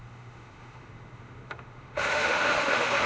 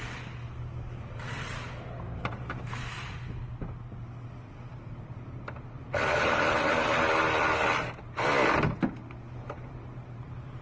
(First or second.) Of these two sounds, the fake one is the first